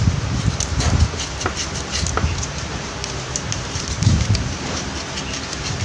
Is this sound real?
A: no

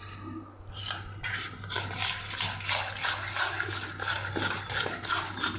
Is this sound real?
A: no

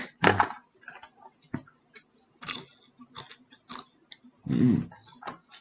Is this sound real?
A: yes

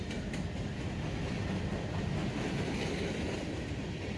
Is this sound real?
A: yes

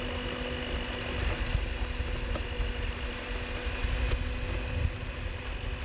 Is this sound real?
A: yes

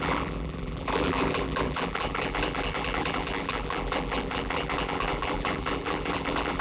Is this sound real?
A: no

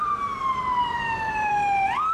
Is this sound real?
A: no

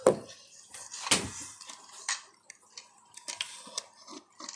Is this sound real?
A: yes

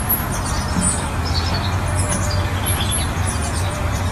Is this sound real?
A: yes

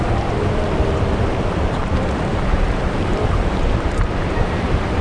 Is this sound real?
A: no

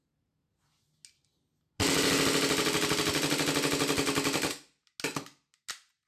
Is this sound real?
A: yes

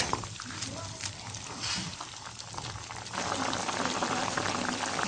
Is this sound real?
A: yes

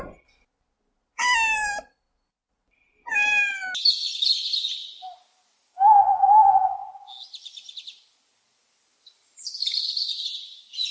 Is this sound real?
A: yes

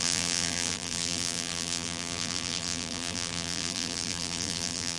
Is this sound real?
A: no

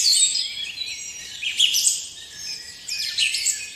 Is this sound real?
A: no